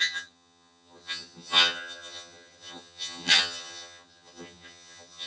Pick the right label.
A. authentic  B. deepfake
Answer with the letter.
B